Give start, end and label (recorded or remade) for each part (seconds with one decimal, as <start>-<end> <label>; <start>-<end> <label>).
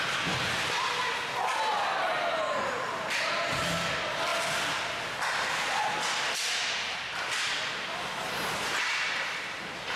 0.0-10.0 recorded